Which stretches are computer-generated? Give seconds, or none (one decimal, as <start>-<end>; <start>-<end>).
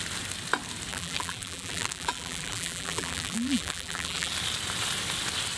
0.9-4.3